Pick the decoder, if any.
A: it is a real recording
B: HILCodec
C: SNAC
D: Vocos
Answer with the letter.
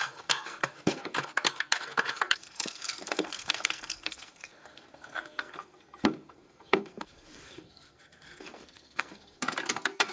C